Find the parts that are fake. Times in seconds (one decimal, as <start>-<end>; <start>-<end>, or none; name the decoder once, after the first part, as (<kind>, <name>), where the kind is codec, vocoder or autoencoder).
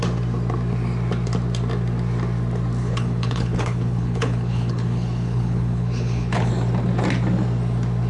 2.8-6.5 (codec, HILCodec)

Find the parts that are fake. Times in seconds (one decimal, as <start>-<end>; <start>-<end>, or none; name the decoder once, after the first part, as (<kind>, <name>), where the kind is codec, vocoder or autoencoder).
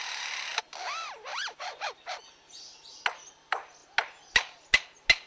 none